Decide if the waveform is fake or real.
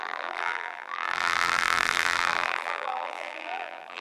fake